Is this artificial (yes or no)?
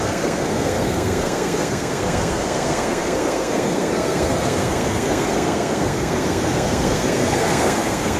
yes